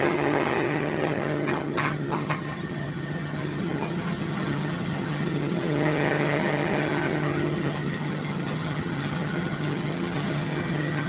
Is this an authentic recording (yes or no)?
no